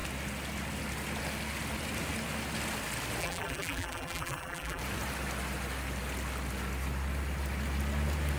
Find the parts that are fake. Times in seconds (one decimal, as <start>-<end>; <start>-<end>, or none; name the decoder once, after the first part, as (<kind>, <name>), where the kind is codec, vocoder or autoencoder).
3.2-4.8 (vocoder, BigVGAN v2)